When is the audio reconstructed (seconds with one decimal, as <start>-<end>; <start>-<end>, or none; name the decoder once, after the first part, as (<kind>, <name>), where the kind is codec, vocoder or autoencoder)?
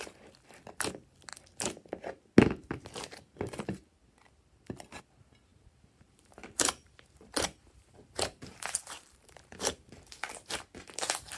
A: 5.5-10.6 (vocoder, BigVGAN v2)